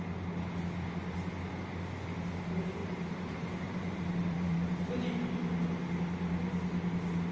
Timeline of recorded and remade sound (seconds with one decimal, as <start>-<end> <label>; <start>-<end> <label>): 0.0-2.8 recorded; 2.8-4.9 remade; 4.9-7.3 recorded